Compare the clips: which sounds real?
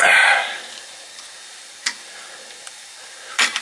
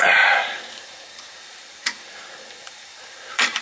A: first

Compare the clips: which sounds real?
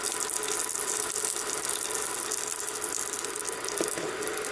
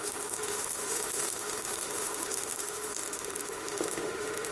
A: first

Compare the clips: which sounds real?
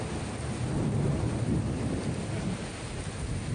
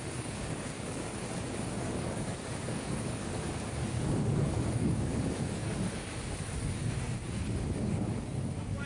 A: first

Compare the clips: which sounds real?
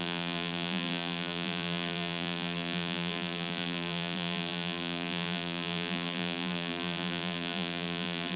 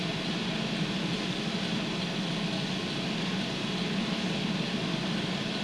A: second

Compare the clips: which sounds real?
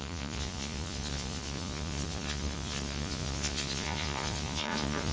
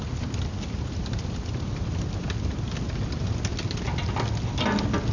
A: second